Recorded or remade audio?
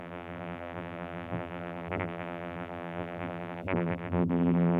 remade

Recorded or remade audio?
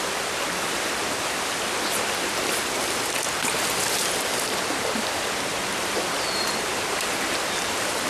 remade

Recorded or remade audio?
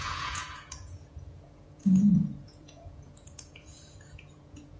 remade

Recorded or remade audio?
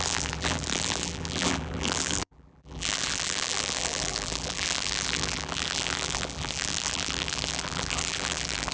remade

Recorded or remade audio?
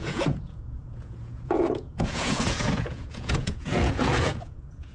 remade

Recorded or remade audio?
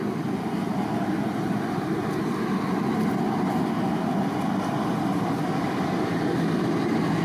recorded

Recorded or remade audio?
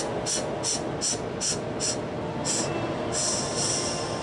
recorded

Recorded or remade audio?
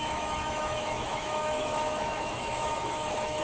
remade